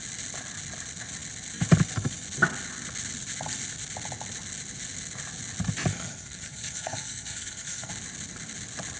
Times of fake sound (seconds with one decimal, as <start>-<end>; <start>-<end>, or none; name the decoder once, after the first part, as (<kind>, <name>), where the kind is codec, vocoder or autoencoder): 5.9-7.9 (codec, SNAC)